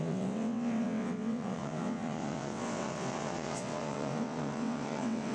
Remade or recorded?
remade